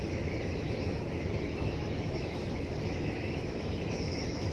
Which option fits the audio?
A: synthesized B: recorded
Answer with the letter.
A